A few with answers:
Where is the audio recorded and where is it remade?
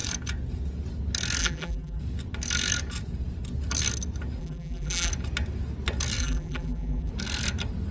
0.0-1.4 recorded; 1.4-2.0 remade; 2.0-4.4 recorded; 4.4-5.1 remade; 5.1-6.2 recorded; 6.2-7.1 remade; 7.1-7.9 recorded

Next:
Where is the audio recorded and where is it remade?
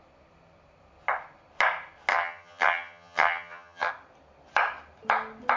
0.0-2.1 recorded; 2.1-3.9 remade; 3.9-5.6 recorded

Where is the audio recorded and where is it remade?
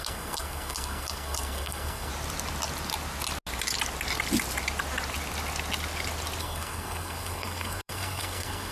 0.0-2.1 remade; 2.1-6.4 recorded; 6.4-8.7 remade